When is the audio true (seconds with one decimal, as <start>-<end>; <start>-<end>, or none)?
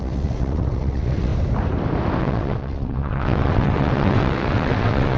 1.3-2.2